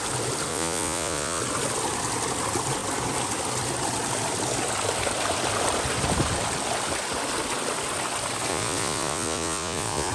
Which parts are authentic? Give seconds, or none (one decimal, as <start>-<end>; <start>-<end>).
0.0-0.5; 1.4-8.5